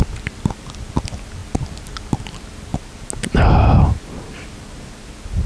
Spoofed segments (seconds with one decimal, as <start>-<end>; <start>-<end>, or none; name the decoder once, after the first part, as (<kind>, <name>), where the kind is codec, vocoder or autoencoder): none